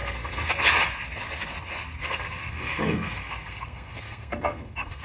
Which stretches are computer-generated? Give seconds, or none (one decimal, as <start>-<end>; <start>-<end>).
0.0-0.5; 2.0-5.0